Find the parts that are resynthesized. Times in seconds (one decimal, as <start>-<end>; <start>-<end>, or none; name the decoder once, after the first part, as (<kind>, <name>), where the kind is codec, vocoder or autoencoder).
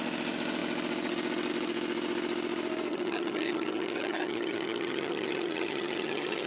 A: 2.9-6.5 (vocoder, HiFi-GAN)